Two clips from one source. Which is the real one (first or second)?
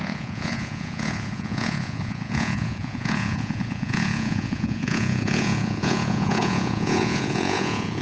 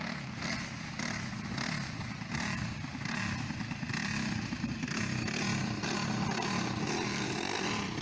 second